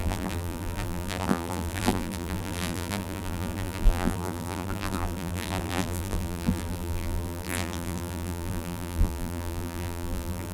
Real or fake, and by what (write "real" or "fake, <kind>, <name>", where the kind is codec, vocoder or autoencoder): fake, vocoder, BigVGAN v2